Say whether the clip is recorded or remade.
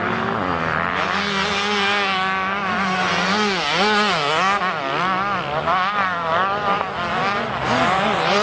recorded